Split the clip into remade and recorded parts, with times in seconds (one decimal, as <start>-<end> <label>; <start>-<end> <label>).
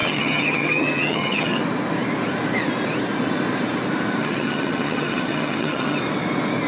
0.0-1.6 remade; 1.6-4.2 recorded; 4.2-6.0 remade; 6.0-6.7 recorded